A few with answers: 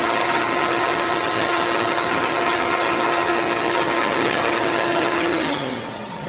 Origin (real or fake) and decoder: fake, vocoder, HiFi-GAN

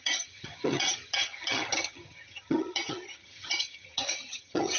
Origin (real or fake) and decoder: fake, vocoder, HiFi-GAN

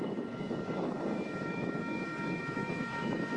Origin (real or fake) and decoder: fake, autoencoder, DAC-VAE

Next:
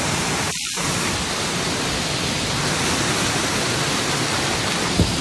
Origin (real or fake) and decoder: real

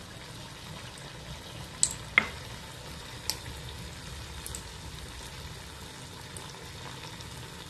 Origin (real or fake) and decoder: real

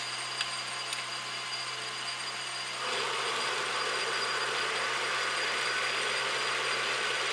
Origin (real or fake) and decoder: real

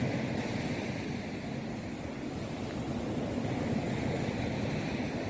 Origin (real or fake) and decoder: real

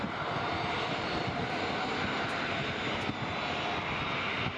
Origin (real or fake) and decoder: real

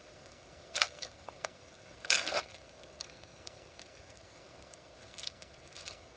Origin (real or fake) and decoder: fake, codec, SNAC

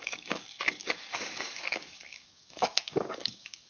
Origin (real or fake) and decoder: fake, codec, DAC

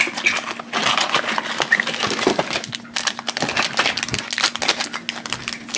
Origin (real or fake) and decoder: real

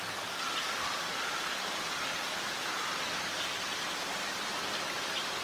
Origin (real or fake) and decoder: real